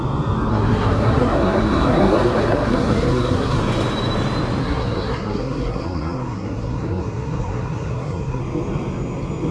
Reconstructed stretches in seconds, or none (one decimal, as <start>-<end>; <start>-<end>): 0.5-3.6; 4.6-8.4